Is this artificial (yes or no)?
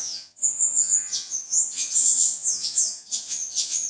yes